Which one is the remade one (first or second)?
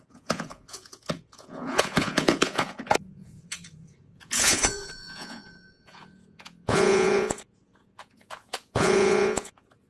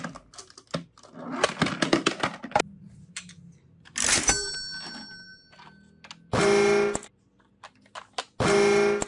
first